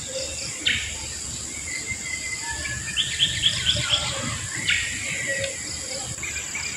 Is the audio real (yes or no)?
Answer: yes